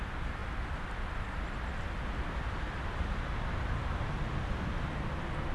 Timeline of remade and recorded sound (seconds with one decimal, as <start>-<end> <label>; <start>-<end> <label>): 0.0-5.5 recorded